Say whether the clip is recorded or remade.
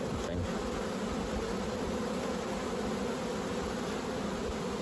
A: recorded